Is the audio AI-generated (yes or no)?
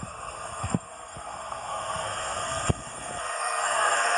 yes